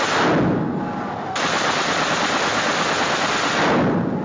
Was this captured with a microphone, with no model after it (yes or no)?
yes